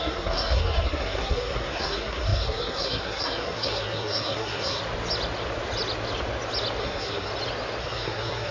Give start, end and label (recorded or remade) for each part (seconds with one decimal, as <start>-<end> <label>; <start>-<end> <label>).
0.0-4.8 remade; 4.8-6.8 recorded; 6.8-7.3 remade; 7.3-7.8 recorded; 7.8-8.5 remade